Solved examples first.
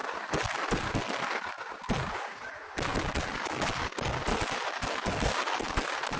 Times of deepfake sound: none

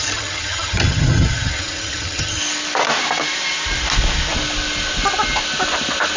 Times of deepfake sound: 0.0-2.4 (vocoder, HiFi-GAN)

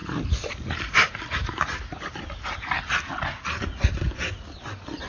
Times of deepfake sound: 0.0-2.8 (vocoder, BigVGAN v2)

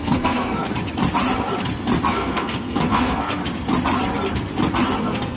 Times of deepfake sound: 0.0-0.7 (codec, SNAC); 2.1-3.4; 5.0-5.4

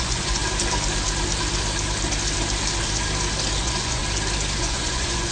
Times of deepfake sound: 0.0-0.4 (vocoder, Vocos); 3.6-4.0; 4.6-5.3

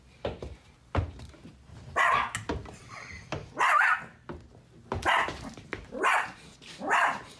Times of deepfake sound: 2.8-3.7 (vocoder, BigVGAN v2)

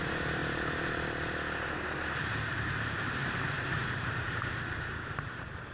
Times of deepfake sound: 0.0-0.4 (vocoder, BigVGAN v2); 2.2-5.7